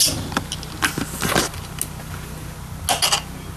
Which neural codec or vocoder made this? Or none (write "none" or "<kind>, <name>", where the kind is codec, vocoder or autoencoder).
none